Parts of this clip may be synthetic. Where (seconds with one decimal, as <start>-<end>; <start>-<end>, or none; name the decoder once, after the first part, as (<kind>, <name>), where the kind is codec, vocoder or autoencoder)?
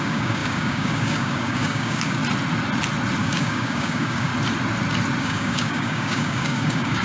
0.0-2.2 (codec, DAC); 3.2-4.3; 5.2-7.0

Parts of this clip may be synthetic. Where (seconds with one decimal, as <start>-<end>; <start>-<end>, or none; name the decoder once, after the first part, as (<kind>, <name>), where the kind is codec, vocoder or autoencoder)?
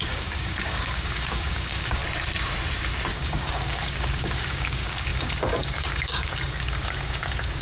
0.0-2.0 (codec, DAC); 3.1-7.6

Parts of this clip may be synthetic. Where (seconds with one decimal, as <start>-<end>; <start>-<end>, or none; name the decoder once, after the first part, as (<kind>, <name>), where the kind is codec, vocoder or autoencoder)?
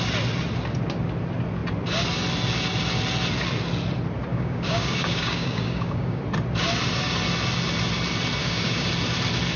4.3-6.2 (codec, DAC); 8.4-8.9